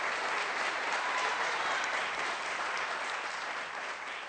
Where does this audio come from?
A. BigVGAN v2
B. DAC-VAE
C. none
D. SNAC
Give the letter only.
A